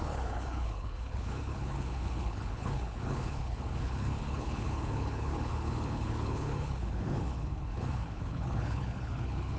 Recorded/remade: remade